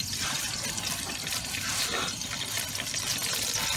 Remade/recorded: recorded